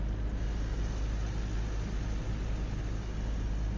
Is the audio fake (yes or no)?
no